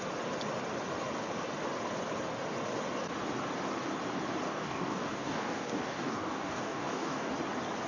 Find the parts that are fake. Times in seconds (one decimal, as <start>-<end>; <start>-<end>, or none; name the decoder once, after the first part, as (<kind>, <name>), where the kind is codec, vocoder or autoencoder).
4.5-7.3 (codec, DAC)